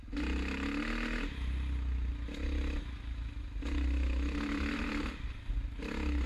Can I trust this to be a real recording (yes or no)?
yes